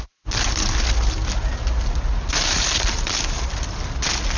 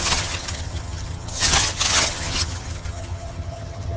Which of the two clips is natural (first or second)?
first